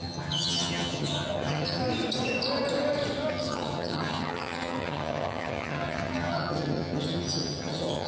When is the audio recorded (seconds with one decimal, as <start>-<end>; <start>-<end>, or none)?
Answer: 1.8-3.3